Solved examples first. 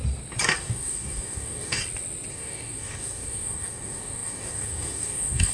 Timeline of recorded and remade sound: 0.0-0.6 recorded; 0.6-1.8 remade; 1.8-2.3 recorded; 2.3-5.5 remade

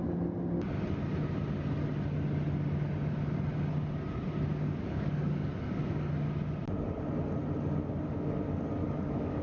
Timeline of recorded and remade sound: 0.0-4.5 recorded; 4.5-6.1 remade; 6.1-8.8 recorded; 8.8-9.4 remade

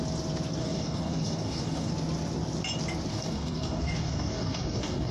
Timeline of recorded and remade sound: 0.0-0.6 recorded; 0.6-1.9 remade; 1.9-3.1 recorded; 3.1-5.1 remade

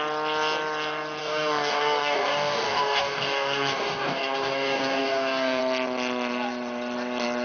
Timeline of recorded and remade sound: 0.0-1.2 recorded; 1.2-5.6 remade; 5.6-7.4 recorded

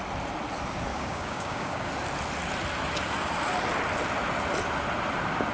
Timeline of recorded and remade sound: 0.0-0.9 recorded; 0.9-1.9 remade; 1.9-5.5 recorded

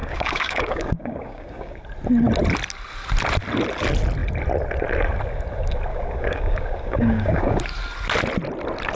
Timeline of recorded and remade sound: 0.0-1.8 remade; 1.8-5.9 recorded; 5.9-7.6 remade; 7.6-9.0 recorded